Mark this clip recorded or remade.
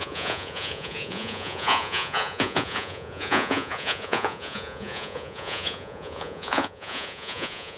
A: remade